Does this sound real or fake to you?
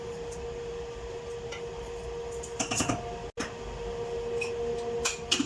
real